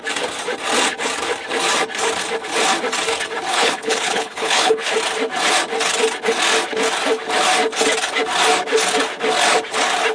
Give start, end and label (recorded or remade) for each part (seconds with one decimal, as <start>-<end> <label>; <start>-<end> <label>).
0.0-3.5 recorded; 3.5-4.9 remade; 4.9-10.1 recorded